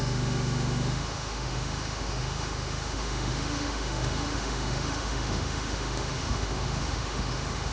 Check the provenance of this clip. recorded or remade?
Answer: remade